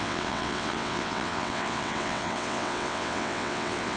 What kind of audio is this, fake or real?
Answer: fake